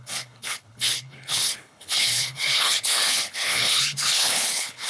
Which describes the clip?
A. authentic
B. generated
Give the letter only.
B